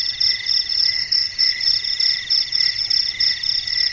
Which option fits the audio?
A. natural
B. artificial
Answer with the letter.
A